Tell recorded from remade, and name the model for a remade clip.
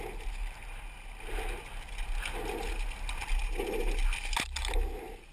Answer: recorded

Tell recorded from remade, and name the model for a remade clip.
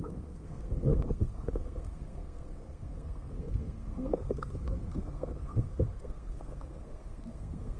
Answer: remade, codec, SNAC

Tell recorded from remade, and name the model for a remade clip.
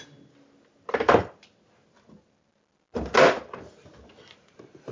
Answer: recorded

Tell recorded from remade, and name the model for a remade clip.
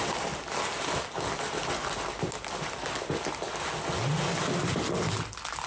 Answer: recorded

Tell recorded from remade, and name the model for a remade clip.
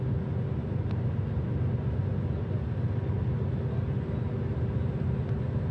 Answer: recorded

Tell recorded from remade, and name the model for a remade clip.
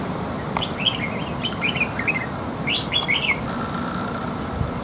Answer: recorded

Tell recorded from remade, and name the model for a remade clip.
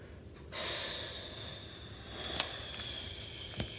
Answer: recorded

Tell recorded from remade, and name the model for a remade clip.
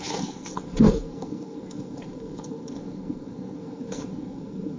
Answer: remade, codec, SNAC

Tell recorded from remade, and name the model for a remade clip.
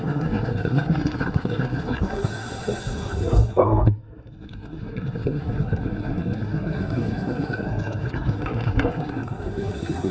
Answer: remade, codec, SNAC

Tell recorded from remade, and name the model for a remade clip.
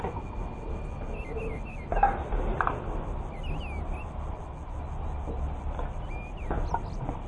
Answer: recorded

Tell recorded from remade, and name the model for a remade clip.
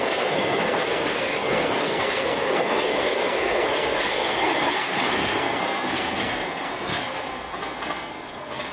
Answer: remade, codec, SNAC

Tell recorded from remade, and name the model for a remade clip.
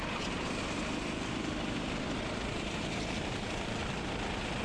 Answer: recorded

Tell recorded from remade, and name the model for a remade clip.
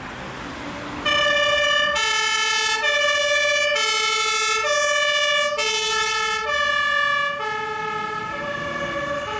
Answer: recorded